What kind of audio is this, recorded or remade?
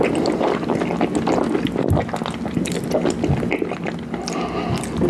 recorded